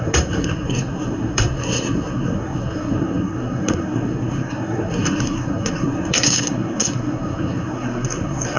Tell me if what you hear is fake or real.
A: fake